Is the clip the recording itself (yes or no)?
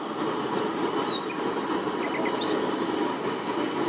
yes